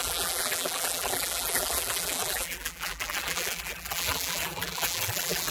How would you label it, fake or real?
fake